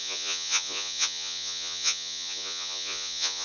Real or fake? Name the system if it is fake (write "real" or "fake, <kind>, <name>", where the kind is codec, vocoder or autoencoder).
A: fake, vocoder, Vocos